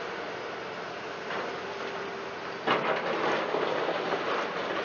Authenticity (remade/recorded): recorded